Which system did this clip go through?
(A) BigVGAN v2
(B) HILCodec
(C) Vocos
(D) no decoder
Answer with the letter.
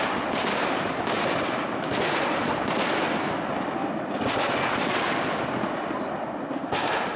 D